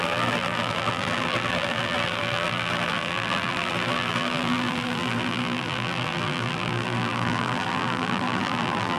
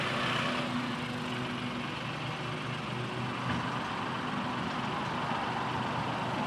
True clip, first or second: second